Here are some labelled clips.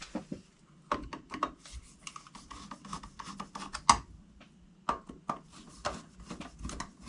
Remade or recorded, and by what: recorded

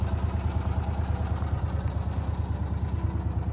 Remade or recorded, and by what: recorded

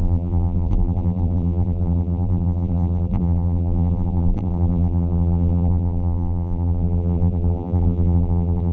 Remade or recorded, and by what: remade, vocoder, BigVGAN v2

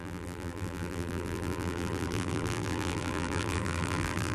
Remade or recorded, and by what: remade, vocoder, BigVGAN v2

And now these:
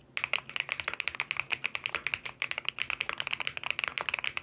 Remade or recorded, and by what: recorded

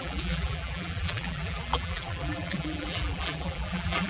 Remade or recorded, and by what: remade, vocoder, BigVGAN v2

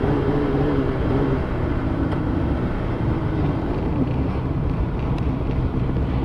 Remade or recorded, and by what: remade, vocoder, BigVGAN v2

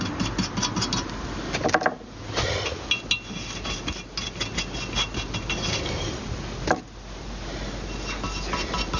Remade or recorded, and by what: recorded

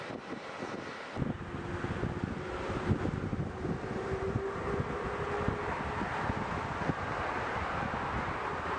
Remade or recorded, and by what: recorded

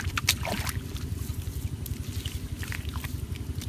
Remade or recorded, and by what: recorded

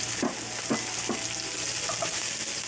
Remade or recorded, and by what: recorded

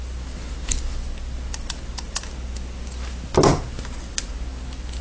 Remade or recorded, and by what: recorded